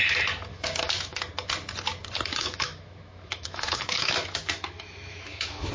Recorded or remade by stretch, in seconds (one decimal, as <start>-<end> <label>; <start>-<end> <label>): 0.0-0.5 recorded; 0.5-1.2 remade; 1.2-2.3 recorded; 2.3-5.7 remade